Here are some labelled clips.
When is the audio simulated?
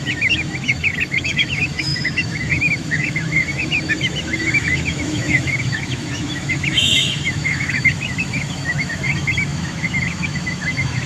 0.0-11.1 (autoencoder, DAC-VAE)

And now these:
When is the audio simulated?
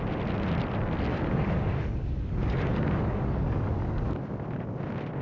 1.1-4.2 (codec, DAC)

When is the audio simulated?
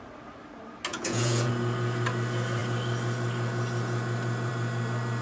0.9-1.5 (vocoder, Vocos)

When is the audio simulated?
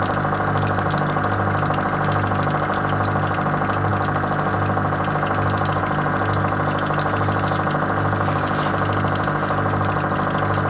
none